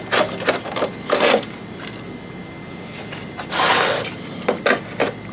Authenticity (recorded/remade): recorded